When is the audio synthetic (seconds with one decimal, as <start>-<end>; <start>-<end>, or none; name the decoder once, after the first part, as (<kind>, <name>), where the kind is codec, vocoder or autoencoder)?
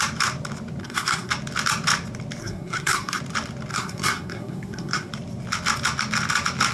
0.8-1.3 (codec, SNAC); 2.4-3.2; 3.7-5.1